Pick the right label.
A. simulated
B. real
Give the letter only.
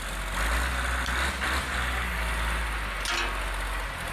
B